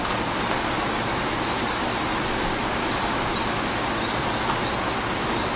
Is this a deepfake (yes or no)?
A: no